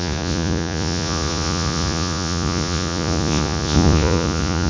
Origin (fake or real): fake